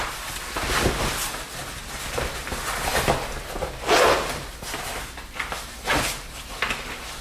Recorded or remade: recorded